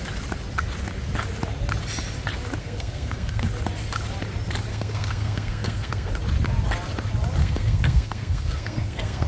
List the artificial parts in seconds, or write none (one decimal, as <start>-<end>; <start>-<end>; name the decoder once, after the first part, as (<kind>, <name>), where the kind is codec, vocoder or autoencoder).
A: 2.6-3.5 (codec, SNAC); 4.7-6.1; 7.4-9.3